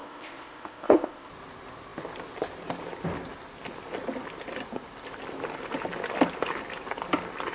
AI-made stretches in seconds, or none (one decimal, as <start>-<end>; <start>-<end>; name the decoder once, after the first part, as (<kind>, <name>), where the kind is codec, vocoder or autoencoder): 0.0-1.3 (codec, ZipCodec)